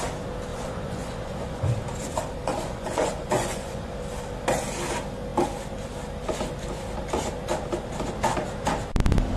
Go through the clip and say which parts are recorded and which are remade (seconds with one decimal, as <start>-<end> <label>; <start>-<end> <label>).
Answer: 0.0-0.5 recorded; 0.5-1.7 remade; 1.7-2.5 recorded; 2.5-3.9 remade; 3.9-9.4 recorded